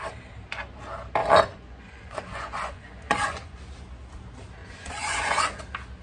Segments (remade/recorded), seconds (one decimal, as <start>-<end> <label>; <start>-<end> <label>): 0.0-1.2 recorded; 1.2-3.6 remade; 3.6-4.6 recorded; 4.6-5.6 remade; 5.6-6.0 recorded